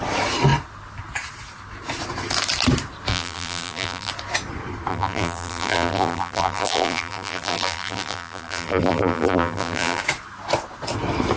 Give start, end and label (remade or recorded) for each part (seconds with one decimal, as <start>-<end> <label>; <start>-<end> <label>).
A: 0.0-3.1 recorded; 3.1-4.1 remade; 4.1-4.9 recorded; 4.9-10.0 remade; 10.0-11.4 recorded